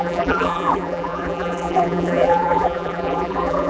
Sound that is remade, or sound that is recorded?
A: remade